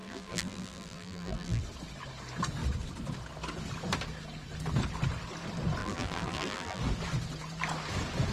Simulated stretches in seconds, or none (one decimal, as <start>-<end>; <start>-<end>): 0.0-1.6; 5.8-6.8